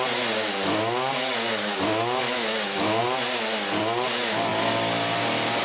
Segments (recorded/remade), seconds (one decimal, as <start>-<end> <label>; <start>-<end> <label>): 0.0-1.6 recorded; 1.6-3.0 remade; 3.0-5.6 recorded